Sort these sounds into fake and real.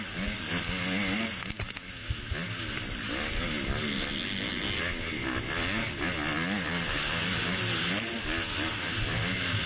real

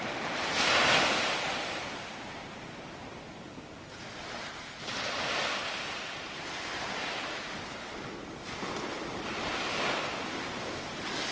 real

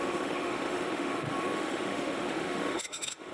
fake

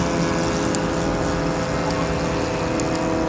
real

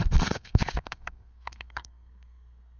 fake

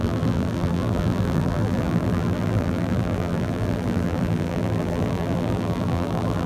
fake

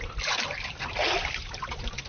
real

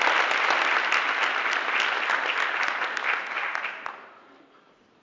real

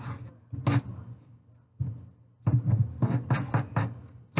real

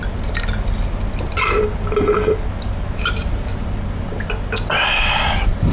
real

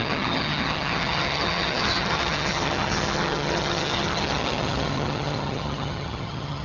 fake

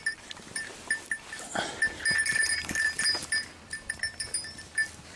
fake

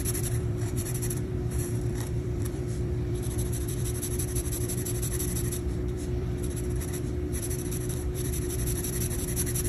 fake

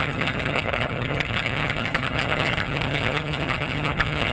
fake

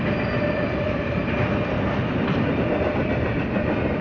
real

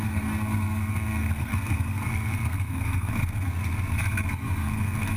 fake